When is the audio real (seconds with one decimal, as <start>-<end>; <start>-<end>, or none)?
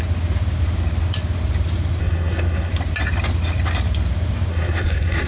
0.0-2.0; 2.7-4.5